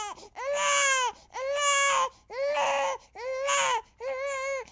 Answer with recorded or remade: recorded